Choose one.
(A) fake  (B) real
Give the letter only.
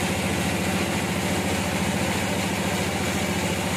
B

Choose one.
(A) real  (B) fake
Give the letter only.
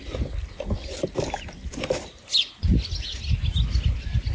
A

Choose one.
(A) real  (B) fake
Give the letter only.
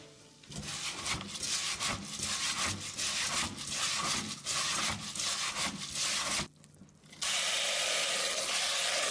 A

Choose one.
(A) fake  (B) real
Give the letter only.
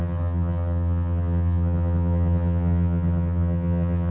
A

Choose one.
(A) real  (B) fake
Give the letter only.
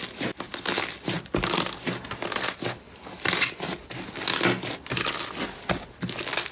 A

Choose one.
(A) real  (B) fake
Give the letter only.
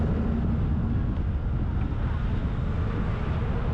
A